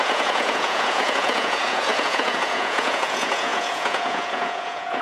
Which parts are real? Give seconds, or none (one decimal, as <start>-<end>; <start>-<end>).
none